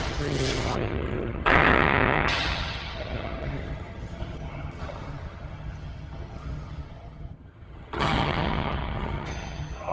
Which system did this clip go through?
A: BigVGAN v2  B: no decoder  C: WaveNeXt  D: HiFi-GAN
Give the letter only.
D